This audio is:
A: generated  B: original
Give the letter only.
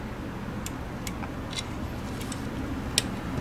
B